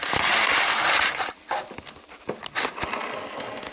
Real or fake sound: real